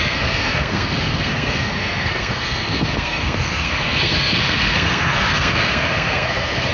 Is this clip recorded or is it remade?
remade